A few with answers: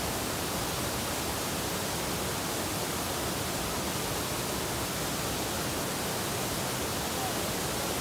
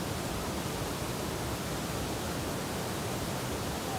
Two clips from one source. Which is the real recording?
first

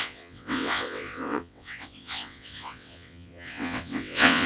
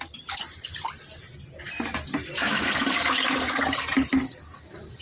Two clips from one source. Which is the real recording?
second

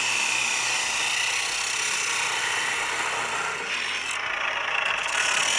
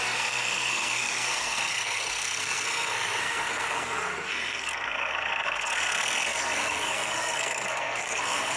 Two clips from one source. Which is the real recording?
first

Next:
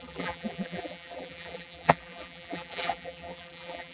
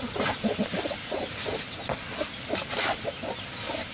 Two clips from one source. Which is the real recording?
second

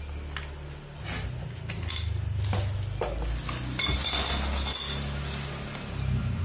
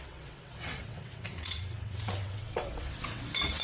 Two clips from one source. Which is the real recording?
first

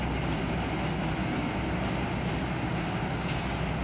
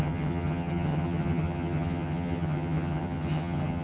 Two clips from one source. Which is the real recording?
first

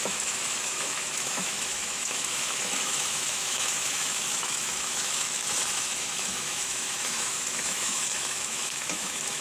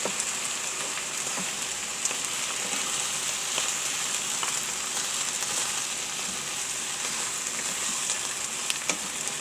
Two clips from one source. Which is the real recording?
second